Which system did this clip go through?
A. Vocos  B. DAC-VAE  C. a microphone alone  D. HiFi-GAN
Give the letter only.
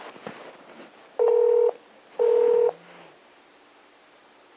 C